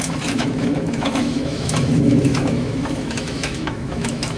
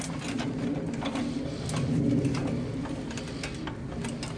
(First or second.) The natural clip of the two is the second